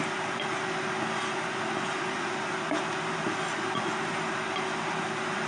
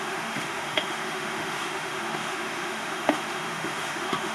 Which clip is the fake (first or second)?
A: second